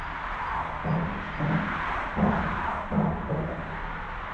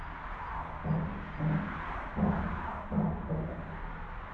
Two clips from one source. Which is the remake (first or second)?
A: first